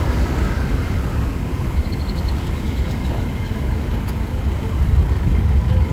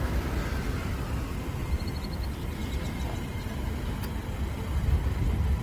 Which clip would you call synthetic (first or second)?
first